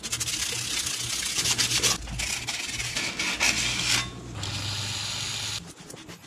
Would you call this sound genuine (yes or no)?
yes